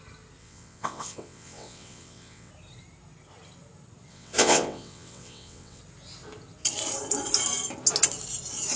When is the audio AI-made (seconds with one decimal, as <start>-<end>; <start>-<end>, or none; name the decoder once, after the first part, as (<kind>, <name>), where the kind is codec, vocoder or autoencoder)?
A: 0.4-2.5 (vocoder, WaveNeXt); 4.1-5.8